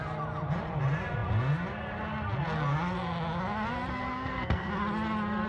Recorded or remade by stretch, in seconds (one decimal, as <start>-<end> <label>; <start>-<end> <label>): 0.0-4.1 recorded; 4.1-4.7 remade; 4.7-5.5 recorded